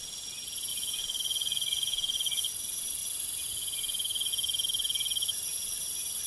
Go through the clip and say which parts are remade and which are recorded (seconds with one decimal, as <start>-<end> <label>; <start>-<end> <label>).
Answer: 0.0-0.7 recorded; 0.7-2.5 remade; 2.5-6.3 recorded